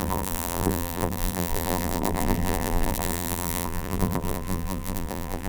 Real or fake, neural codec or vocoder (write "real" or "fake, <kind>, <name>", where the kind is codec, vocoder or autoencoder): fake, vocoder, BigVGAN v2